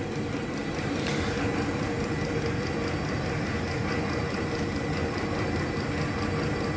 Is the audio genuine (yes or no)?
yes